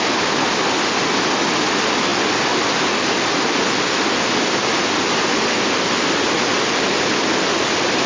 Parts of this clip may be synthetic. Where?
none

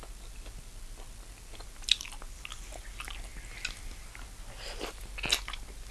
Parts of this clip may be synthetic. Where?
none

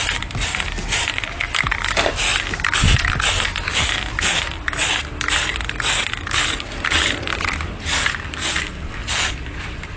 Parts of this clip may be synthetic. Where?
none